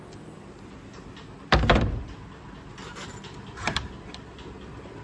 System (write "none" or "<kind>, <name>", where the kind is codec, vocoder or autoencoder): none